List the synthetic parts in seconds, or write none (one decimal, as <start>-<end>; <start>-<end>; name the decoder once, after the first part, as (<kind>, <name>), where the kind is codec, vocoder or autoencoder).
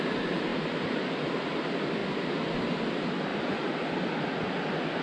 0.5-1.3 (vocoder, BigVGAN v2)